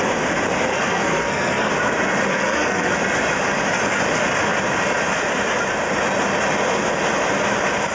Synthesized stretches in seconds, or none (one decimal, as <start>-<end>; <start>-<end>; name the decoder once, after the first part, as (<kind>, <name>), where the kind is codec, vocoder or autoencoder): 0.7-1.7 (codec, SNAC); 2.3-2.9